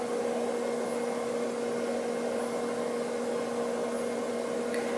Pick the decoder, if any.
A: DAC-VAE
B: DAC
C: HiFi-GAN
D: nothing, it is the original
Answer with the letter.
D